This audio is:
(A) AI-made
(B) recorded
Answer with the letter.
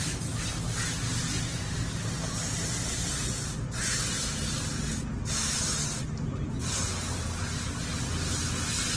B